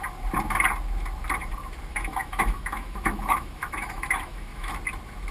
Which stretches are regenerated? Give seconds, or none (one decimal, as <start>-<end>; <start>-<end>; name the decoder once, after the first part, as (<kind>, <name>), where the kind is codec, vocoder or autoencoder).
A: 1.9-4.7 (autoencoder, DAC-VAE)